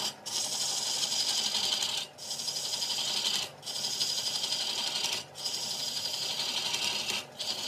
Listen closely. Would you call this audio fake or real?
real